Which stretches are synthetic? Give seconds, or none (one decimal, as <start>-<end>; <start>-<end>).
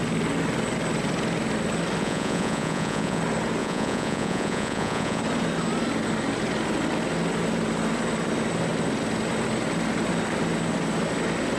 2.0-3.2; 3.6-5.2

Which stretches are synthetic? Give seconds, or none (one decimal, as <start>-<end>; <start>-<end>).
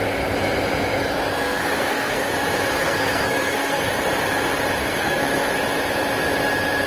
1.3-2.3; 2.8-3.9; 4.8-5.5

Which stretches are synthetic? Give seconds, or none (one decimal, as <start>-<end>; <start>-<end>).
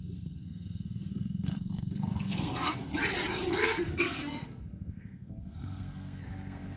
0.0-2.9; 3.5-6.8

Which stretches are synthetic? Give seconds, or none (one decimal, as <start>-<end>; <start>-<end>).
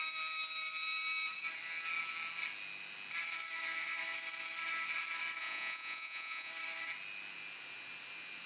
5.4-6.5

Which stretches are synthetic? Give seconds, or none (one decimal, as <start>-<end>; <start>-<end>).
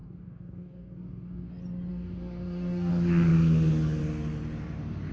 0.0-1.5; 1.9-2.9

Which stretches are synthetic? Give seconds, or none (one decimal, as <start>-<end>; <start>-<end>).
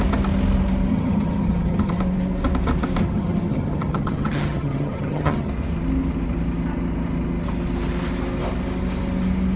0.9-2.0; 3.0-5.5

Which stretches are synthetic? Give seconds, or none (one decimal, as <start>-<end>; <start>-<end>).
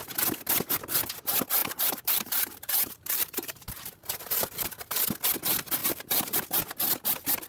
1.6-5.0; 5.8-6.6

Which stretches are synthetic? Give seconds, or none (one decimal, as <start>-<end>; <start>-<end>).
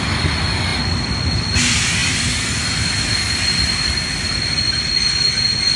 none